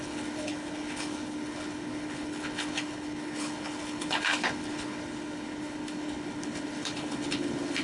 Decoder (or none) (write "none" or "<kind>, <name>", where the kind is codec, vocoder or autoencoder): codec, HILCodec